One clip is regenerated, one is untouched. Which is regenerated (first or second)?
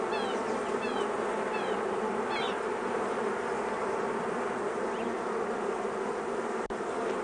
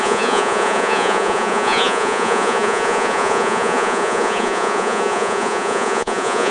second